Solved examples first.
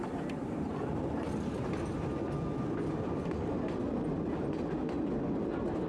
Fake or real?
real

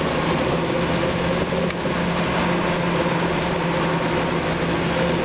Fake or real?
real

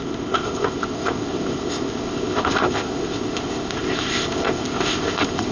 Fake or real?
fake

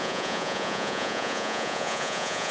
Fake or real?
fake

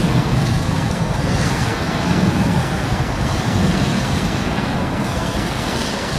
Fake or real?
fake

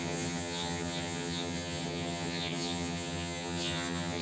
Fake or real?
fake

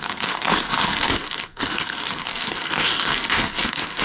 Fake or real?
fake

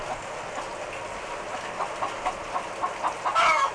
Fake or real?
real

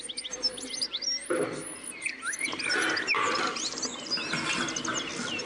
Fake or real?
real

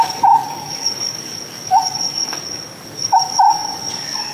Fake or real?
fake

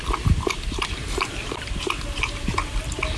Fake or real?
fake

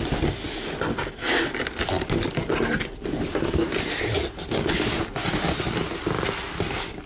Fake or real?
real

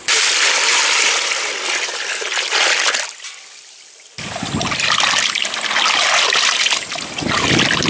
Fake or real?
real